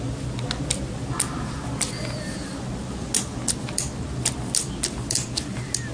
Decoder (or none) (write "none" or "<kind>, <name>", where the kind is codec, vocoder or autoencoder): none